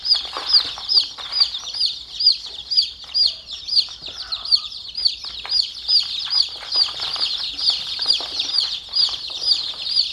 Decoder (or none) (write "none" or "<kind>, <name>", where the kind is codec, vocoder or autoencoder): vocoder, BigVGAN v2